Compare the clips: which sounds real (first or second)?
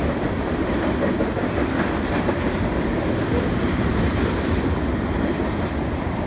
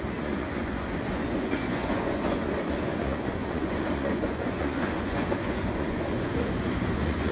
first